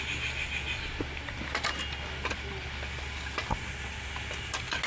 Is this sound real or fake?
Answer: real